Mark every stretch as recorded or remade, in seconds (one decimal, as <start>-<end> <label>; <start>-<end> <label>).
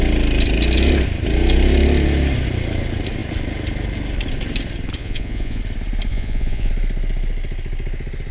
0.0-5.0 recorded; 5.0-5.6 remade; 5.6-6.1 recorded; 6.1-6.7 remade; 6.7-8.3 recorded